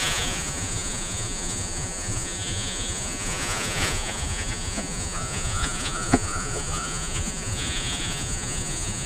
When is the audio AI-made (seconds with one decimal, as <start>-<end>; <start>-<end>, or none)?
0.0-9.1